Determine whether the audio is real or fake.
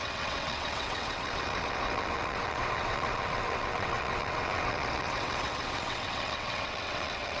fake